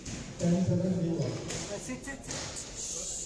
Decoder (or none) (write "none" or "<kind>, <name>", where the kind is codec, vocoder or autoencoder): none